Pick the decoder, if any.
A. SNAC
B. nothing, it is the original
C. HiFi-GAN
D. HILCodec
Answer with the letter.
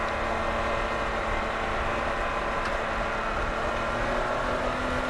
B